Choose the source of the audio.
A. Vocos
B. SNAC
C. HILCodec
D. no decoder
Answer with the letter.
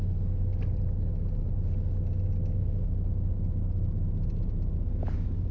D